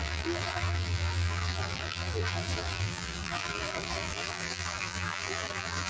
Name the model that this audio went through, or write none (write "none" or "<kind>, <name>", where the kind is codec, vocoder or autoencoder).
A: vocoder, BigVGAN v2